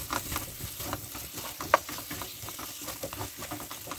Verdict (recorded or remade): recorded